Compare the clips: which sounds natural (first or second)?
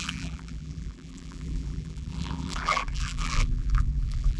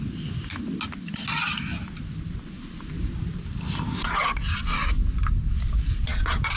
second